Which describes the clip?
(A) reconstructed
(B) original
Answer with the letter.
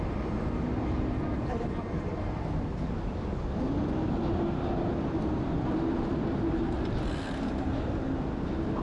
B